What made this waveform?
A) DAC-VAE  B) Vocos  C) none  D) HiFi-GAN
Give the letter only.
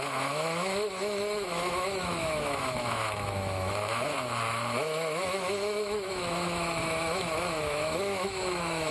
A